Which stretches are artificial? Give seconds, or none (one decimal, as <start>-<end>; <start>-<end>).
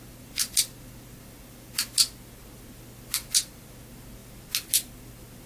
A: none